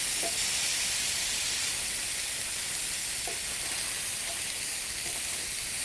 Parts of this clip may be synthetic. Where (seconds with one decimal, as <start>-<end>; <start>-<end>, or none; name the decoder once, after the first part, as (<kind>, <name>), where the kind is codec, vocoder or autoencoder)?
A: none